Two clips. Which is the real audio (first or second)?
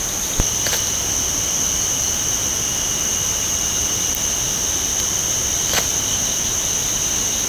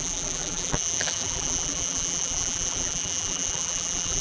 first